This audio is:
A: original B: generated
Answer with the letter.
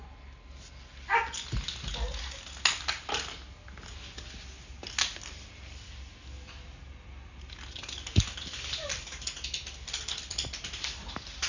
A